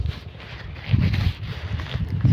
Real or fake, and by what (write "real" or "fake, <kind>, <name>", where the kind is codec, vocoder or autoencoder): real